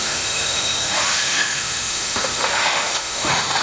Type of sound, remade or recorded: remade